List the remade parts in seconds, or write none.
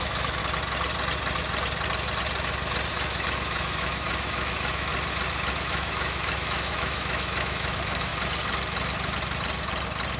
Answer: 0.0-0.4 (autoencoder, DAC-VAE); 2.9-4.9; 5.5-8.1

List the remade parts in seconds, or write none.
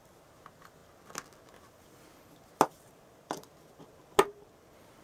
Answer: none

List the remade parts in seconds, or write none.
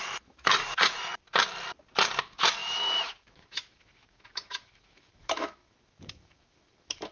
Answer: 0.0-1.1 (autoencoder, DAC-VAE); 2.2-7.1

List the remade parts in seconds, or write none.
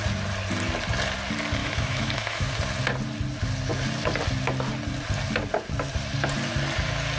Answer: 1.6-2.5 (autoencoder, DAC-VAE)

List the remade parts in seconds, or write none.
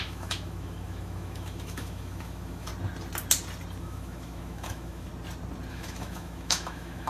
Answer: 0.0-2.7 (autoencoder, DAC-VAE); 3.8-5.1; 5.7-7.1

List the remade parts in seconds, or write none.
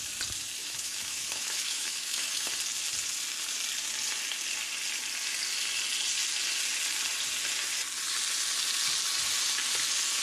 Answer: 0.6-2.5 (autoencoder, DAC-VAE)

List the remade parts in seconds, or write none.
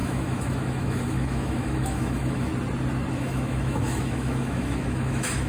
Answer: 0.0-2.5 (autoencoder, DAC-VAE); 3.1-5.5